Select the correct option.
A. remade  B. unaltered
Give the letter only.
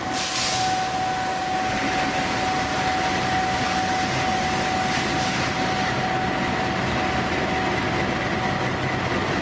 B